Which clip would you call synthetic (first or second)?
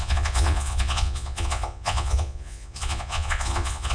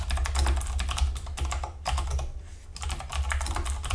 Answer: first